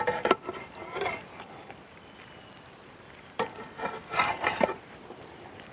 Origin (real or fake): fake